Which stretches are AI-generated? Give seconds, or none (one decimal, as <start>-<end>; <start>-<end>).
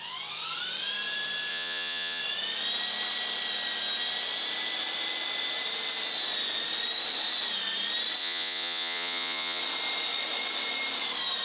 1.5-2.2; 8.2-9.6